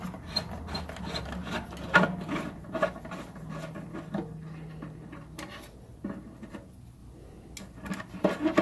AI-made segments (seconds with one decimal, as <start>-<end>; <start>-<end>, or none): none